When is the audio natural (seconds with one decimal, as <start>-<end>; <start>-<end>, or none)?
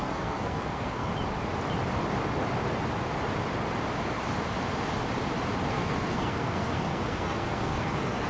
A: 1.1-5.7